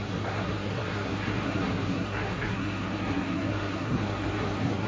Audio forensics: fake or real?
fake